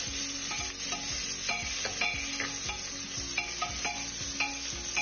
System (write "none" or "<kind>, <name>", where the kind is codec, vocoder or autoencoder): none